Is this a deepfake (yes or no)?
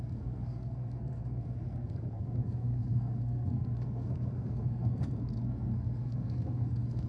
yes